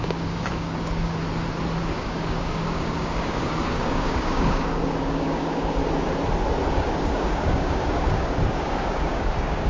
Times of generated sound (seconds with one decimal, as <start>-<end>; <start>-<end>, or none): 0.0-1.2; 1.8-5.8; 6.7-9.7